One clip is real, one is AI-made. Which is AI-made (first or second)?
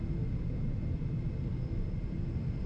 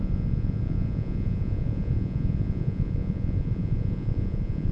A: second